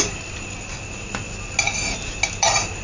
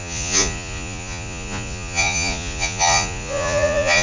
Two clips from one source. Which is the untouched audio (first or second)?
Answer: first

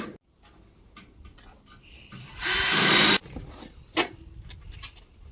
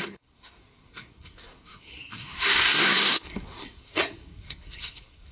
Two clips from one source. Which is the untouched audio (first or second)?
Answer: first